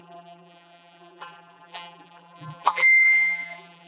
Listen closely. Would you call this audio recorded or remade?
remade